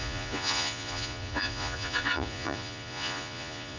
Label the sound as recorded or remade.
remade